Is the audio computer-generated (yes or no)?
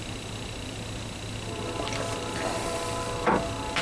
no